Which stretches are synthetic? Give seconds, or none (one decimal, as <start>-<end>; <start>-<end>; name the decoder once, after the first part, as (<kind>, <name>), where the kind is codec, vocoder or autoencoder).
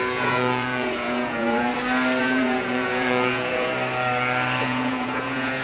0.0-1.7 (vocoder, Vocos); 2.2-3.7; 4.6-5.6